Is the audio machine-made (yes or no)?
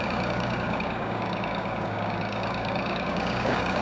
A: yes